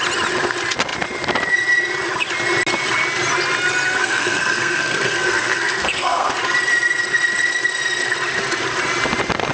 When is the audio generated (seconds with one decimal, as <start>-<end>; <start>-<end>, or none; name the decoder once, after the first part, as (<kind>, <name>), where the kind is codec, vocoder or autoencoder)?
4.0-6.3 (codec, SNAC)